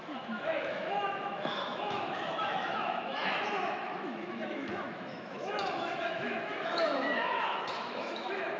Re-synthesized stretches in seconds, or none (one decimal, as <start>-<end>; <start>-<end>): 0.0-8.6